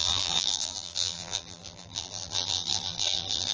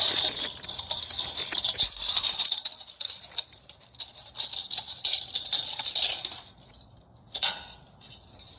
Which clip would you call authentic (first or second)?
second